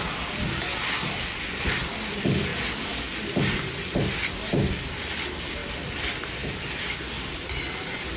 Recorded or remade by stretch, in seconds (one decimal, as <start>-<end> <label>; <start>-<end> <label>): 0.0-8.2 recorded